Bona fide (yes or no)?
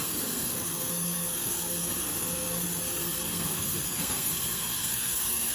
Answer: no